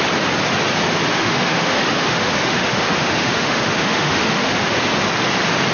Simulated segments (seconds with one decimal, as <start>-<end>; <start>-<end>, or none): 1.1-4.5